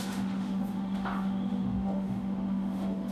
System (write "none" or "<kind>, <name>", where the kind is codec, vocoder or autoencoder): autoencoder, DAC-VAE